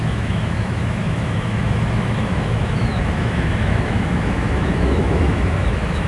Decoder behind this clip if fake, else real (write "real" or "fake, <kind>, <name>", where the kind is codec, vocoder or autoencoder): fake, autoencoder, DAC-VAE